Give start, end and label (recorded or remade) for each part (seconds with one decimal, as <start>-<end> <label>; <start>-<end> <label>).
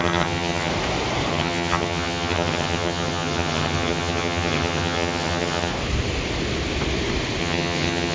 0.0-0.7 remade; 0.7-1.3 recorded; 1.3-5.7 remade; 5.7-7.4 recorded; 7.4-8.1 remade